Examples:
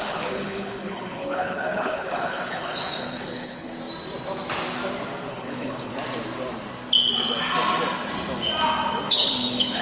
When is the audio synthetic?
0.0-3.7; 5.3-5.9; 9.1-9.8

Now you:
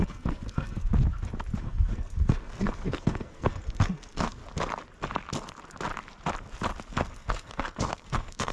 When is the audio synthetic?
0.0-0.9; 1.6-4.4; 6.9-8.5

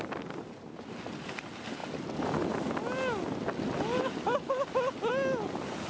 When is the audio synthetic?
none

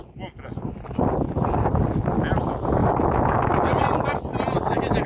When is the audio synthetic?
none

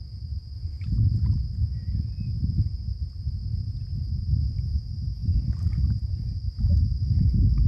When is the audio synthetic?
none

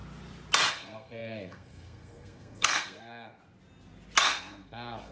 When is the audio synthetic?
0.7-3.4; 4.2-5.1

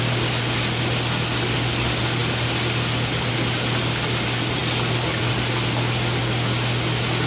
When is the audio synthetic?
none